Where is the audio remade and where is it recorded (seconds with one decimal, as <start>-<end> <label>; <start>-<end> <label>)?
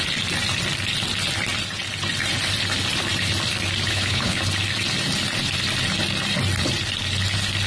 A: 0.0-3.9 recorded; 3.9-4.4 remade; 4.4-7.7 recorded